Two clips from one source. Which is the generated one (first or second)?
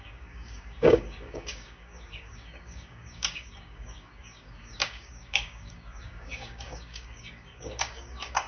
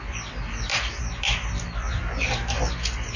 first